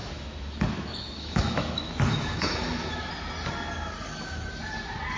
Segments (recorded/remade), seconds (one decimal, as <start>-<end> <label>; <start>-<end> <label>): 0.0-3.1 remade; 3.1-5.2 recorded